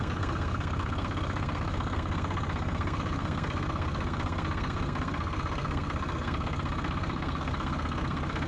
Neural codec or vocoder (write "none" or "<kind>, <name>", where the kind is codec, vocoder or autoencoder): codec, SNAC